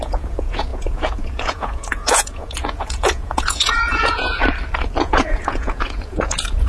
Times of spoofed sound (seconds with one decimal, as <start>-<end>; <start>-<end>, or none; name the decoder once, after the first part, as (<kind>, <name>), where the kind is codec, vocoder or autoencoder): 0.0-4.4 (vocoder, Vocos); 5.0-6.7